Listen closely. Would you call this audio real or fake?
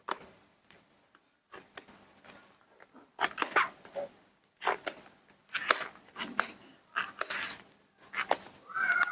real